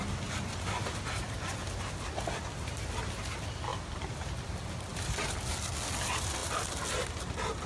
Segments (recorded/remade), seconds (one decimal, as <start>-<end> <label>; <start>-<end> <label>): 0.0-3.7 recorded; 3.7-4.2 remade; 4.2-4.9 recorded; 4.9-5.5 remade; 5.5-7.7 recorded